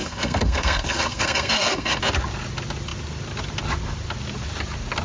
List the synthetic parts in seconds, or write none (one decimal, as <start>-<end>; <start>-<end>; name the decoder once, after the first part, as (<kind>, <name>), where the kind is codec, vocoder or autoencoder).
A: 0.0-2.0 (codec, SNAC)